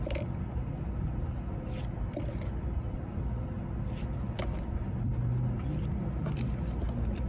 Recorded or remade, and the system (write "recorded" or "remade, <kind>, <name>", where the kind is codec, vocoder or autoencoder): recorded